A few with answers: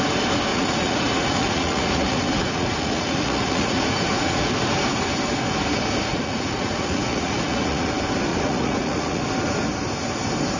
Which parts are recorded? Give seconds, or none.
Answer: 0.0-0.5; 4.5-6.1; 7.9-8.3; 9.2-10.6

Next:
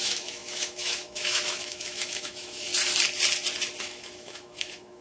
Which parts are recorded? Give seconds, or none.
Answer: 2.7-3.8

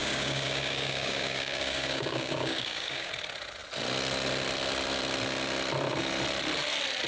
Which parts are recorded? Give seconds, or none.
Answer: 3.1-7.1